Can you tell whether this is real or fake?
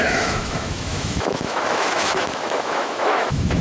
fake